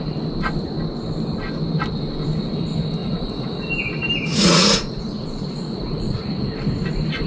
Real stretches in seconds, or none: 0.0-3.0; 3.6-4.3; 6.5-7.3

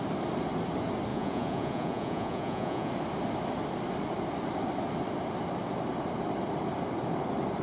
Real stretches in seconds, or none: 0.0-1.1; 2.9-7.6

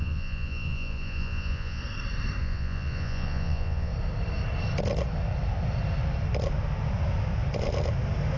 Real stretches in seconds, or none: 1.8-2.4; 3.9-8.4

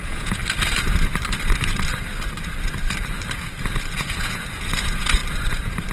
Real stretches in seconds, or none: 0.4-3.9; 5.2-5.9